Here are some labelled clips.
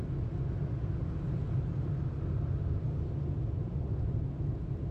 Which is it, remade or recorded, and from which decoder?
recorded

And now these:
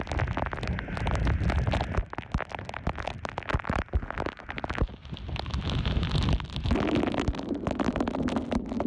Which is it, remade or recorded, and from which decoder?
recorded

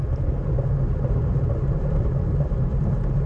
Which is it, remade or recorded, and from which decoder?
remade, vocoder, BigVGAN v2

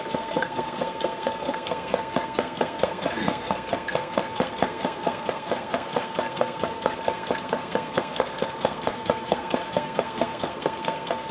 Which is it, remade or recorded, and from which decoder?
remade, codec, SNAC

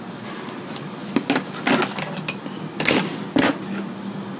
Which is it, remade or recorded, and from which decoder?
recorded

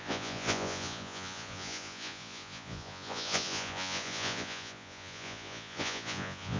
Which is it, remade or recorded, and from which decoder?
remade, vocoder, Vocos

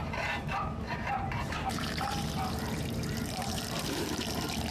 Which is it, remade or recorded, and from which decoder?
remade, vocoder, BigVGAN v2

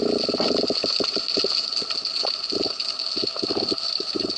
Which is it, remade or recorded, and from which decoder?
recorded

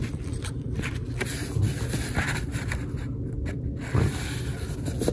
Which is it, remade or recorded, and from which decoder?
recorded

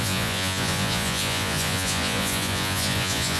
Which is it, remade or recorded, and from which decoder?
remade, vocoder, Vocos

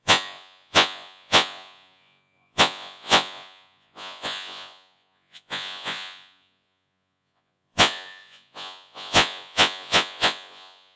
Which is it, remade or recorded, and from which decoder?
remade, vocoder, Vocos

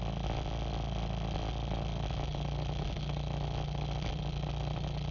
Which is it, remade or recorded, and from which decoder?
recorded